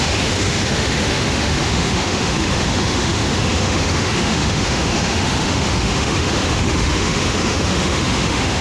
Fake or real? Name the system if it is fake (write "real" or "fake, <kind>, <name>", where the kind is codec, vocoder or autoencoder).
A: fake, autoencoder, DAC-VAE